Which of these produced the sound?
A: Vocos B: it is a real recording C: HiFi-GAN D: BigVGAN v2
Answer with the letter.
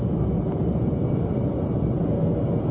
D